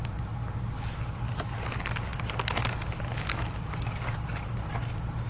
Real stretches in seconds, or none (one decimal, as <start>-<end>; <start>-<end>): 0.0-5.3